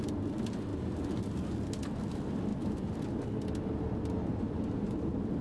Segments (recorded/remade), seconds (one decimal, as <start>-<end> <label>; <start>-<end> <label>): 0.0-5.4 recorded